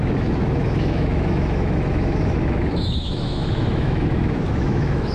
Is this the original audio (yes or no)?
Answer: no